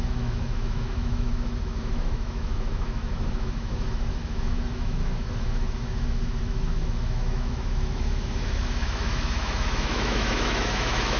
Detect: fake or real fake